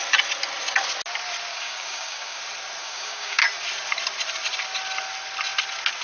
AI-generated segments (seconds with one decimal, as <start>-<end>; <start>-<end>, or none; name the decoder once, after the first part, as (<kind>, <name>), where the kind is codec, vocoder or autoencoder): 1.5-2.4 (codec, DAC); 2.8-3.4